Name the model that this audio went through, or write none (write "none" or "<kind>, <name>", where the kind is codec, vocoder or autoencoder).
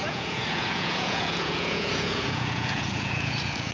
vocoder, Vocos